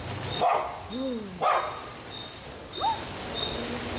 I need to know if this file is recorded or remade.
recorded